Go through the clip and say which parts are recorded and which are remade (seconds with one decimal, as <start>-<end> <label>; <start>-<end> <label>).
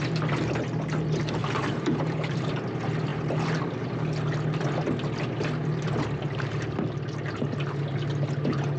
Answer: 0.0-1.4 recorded; 1.4-2.7 remade; 2.7-8.8 recorded